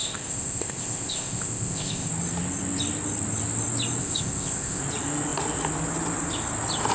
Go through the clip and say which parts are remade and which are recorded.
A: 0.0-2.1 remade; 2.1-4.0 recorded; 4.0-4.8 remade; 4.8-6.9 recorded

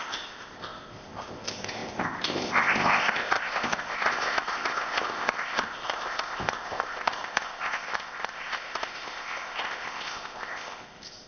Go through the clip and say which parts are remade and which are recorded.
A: 0.0-11.3 remade

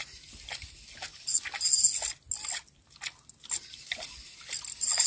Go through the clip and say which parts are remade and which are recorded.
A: 0.0-5.1 recorded

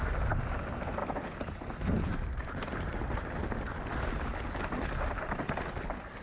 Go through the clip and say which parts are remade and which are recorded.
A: 0.0-6.2 recorded